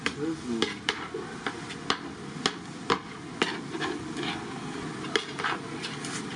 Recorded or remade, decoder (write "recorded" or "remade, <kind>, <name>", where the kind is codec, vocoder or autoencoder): recorded